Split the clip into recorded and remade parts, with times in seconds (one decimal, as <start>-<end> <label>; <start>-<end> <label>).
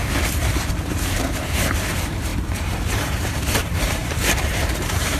0.0-0.7 recorded; 0.7-5.2 remade